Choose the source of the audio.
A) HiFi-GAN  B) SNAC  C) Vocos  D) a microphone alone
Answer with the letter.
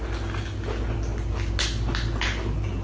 D